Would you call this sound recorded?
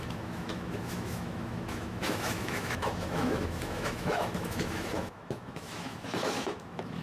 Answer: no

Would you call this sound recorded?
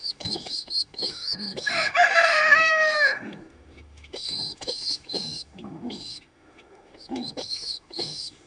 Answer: no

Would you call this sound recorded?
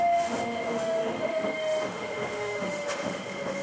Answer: no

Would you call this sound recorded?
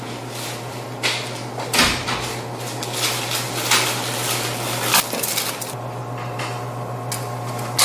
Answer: yes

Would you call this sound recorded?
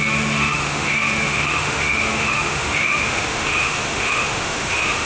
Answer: no